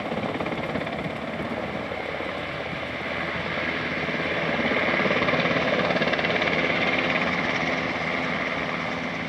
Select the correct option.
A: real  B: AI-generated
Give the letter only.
A